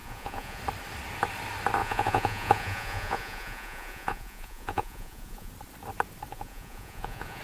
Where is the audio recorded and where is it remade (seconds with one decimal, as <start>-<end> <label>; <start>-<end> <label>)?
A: 0.0-0.6 remade; 0.6-1.8 recorded; 1.8-5.5 remade; 5.5-6.3 recorded; 6.3-7.4 remade